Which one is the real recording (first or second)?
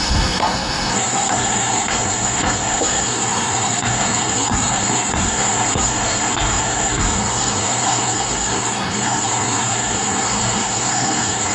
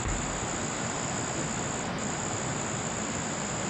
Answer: second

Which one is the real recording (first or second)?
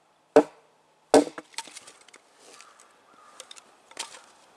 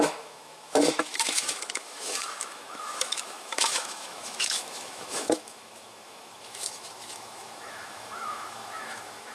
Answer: first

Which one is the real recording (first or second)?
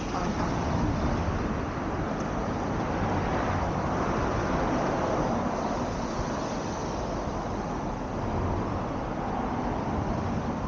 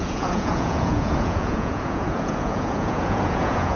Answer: first